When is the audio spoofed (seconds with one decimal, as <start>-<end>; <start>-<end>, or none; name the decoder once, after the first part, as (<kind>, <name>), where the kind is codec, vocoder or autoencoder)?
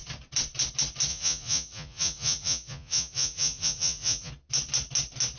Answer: 1.1-4.3 (vocoder, Vocos)